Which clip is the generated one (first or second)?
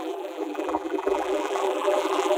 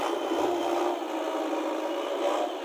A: first